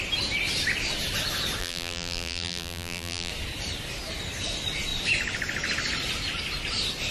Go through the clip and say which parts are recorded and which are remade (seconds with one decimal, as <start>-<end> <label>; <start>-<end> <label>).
0.0-1.6 recorded; 1.6-3.3 remade; 3.3-7.1 recorded